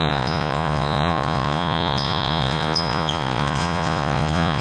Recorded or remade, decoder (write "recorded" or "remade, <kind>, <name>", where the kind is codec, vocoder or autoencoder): remade, vocoder, Vocos